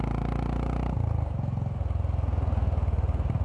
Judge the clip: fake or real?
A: real